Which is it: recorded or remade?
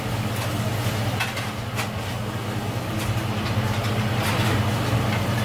recorded